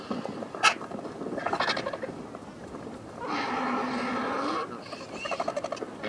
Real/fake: real